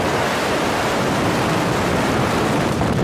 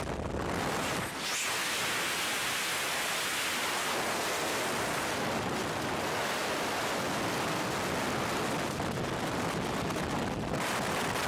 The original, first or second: second